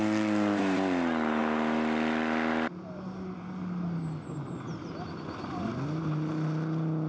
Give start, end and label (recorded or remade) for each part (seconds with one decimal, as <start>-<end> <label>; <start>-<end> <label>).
0.0-7.1 recorded

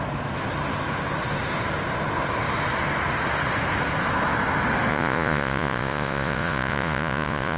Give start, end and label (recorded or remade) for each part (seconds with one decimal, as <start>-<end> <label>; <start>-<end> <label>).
0.0-4.9 recorded; 4.9-7.6 remade

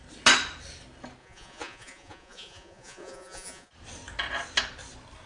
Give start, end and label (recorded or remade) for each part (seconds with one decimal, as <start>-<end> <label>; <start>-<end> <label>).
0.0-1.2 recorded; 1.2-3.7 remade; 3.7-5.3 recorded

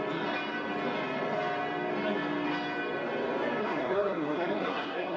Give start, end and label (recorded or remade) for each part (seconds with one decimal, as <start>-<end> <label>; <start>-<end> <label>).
0.0-3.6 recorded; 3.6-5.2 remade

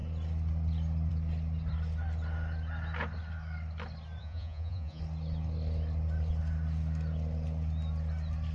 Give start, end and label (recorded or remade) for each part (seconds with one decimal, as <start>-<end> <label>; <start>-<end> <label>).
0.0-4.2 recorded; 4.2-5.0 remade; 5.0-8.5 recorded

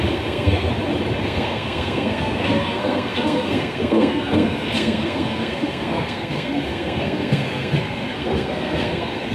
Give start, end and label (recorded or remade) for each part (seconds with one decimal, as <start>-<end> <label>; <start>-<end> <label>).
0.0-0.7 remade; 0.7-1.2 recorded; 1.2-9.3 remade

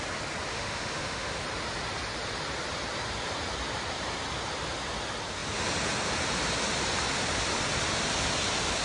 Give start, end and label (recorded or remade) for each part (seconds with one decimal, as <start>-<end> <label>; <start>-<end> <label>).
0.0-0.5 recorded; 0.5-1.4 remade; 1.4-8.8 recorded